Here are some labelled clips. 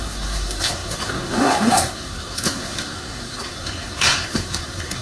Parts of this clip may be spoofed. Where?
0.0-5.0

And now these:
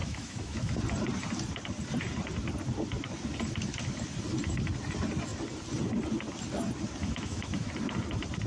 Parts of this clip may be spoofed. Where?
0.0-0.7; 7.0-7.7